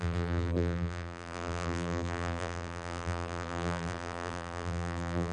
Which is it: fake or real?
fake